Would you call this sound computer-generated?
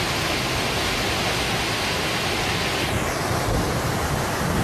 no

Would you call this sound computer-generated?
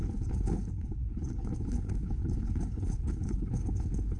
yes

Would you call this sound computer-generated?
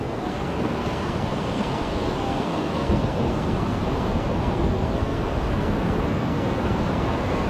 yes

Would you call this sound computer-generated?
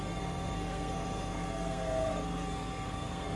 yes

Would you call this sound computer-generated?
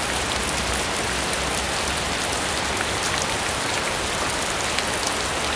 no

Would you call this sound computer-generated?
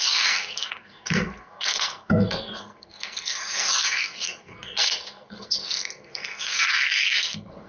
yes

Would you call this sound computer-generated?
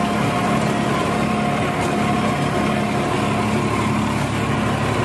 no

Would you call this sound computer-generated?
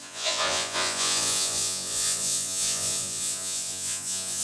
yes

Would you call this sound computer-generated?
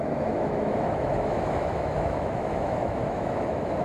yes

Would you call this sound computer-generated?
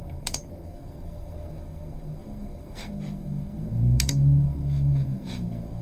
yes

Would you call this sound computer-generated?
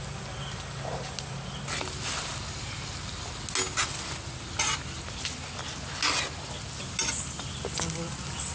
no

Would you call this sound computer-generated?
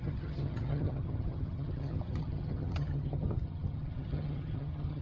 yes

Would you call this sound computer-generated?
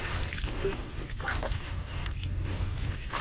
yes